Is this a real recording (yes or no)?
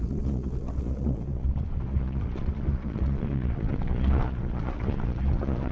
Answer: no